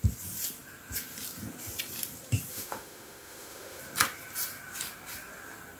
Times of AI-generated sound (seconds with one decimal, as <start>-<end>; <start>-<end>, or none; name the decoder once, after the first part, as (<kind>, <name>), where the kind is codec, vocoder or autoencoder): 2.5-3.8 (autoencoder, DAC-VAE)